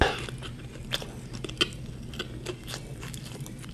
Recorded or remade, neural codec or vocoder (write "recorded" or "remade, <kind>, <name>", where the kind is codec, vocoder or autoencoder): recorded